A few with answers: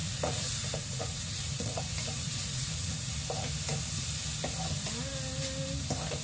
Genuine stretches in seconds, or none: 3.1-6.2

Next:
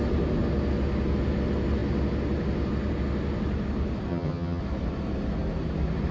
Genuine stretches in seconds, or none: 0.0-4.1; 4.6-6.1

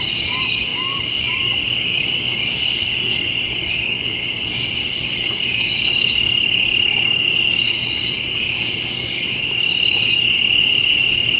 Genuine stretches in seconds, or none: none

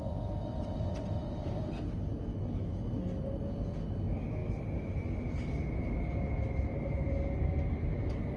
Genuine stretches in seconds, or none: 0.0-2.3; 2.9-8.4

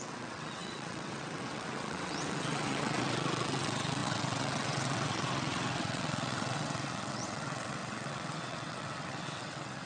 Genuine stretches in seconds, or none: none

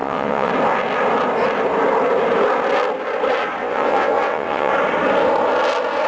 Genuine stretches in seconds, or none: 0.5-3.6; 4.7-6.1

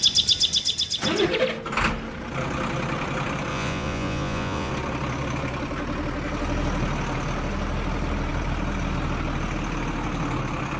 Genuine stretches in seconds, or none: 0.0-3.5; 4.7-10.8

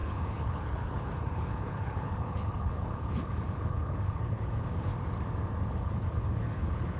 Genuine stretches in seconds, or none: 4.9-5.7